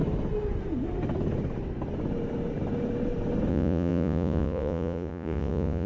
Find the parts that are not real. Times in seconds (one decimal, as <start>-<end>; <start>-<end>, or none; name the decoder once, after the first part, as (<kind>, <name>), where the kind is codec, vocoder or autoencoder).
3.5-5.9 (vocoder, Vocos)